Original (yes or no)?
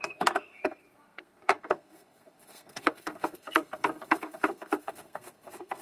no